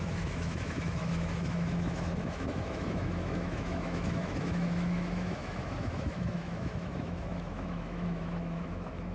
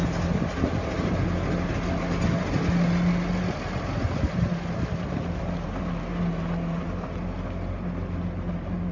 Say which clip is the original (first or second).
second